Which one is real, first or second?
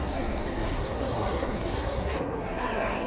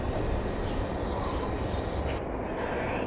second